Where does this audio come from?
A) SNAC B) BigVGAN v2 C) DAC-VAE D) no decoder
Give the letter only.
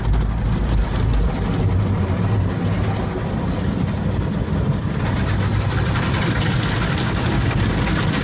D